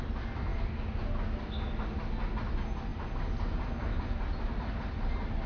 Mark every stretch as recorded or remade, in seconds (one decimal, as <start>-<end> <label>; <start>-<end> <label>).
0.0-5.5 recorded